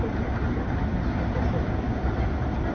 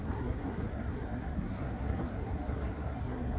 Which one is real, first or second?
first